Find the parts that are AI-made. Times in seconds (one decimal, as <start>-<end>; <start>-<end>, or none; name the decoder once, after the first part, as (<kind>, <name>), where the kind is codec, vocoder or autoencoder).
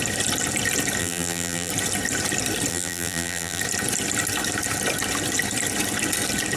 1.0-1.7 (vocoder, BigVGAN v2); 2.7-3.6